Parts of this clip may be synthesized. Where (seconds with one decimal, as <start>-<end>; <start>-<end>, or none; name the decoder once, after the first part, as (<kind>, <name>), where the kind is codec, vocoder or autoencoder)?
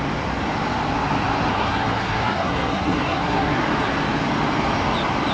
1.5-3.6 (codec, SNAC)